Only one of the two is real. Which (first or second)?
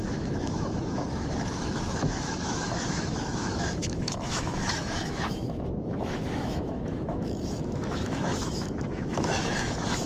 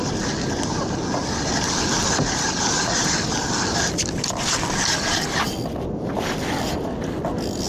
second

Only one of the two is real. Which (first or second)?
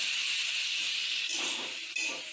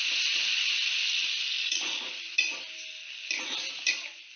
second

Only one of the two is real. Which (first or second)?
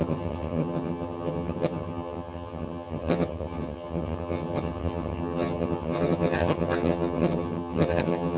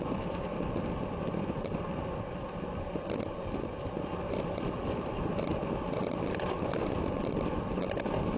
second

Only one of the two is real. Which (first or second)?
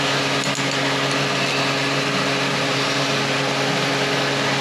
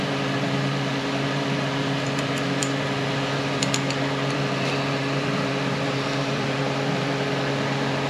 first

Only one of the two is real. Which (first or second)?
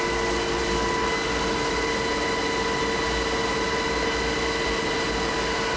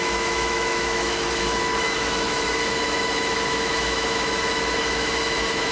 first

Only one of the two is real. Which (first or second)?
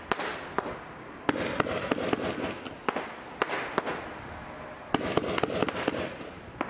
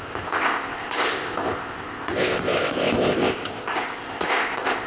first